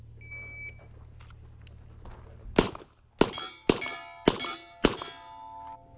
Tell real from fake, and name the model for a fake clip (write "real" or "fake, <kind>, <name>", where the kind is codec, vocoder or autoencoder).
real